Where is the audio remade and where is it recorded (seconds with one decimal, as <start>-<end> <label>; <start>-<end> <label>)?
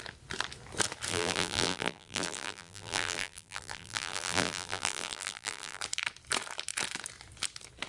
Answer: 0.0-1.1 recorded; 1.1-5.8 remade; 5.8-7.9 recorded